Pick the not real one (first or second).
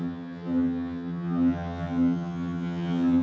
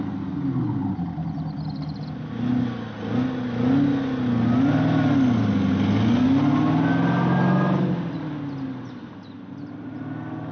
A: first